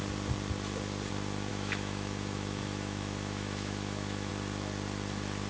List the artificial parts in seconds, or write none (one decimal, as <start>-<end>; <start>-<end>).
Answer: 1.5-4.3